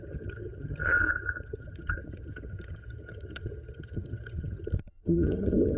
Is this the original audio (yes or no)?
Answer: no